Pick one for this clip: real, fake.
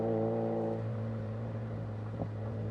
fake